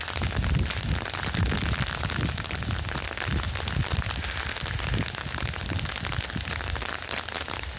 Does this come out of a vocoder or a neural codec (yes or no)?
no